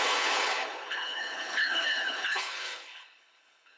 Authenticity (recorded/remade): remade